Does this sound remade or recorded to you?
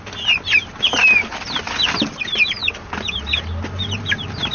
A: recorded